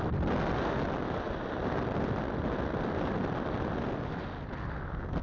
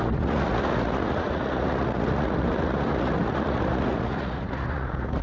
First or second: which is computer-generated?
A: second